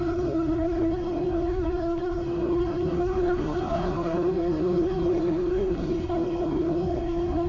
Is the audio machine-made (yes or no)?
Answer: yes